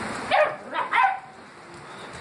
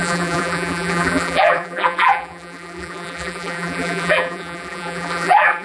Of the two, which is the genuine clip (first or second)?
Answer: first